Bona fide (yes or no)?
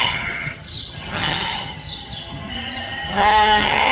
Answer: no